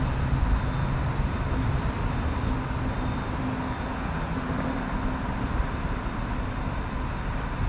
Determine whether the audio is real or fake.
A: real